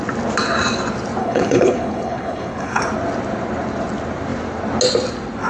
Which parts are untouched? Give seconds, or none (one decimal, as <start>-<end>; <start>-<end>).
0.0-1.2; 2.8-5.5